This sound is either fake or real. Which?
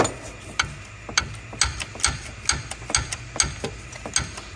real